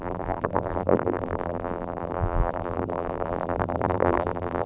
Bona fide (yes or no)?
no